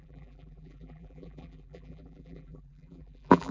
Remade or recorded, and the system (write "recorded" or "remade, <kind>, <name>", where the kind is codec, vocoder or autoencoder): remade, vocoder, BigVGAN v2